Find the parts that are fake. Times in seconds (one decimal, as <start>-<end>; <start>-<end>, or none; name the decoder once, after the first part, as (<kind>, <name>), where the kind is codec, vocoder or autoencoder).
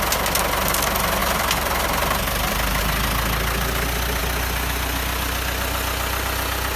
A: 1.2-2.8 (vocoder, BigVGAN v2)